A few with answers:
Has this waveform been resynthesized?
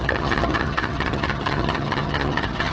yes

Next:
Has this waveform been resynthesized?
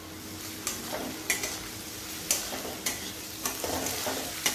no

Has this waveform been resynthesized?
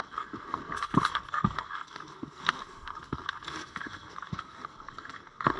yes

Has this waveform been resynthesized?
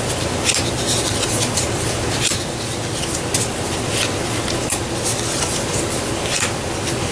no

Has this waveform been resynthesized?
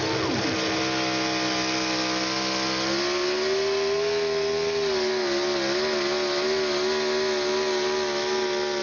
no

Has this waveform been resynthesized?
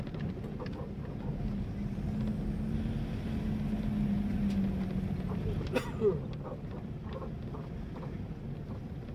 no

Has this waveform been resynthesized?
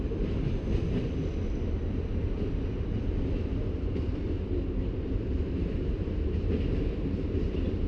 no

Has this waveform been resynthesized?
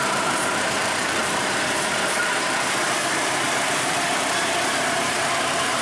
yes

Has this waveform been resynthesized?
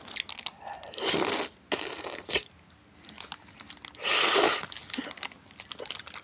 no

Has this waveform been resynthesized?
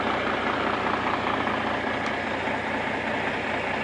no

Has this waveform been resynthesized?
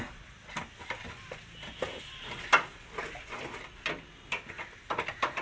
no